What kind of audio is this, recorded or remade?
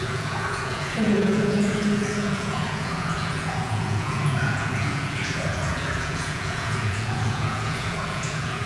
remade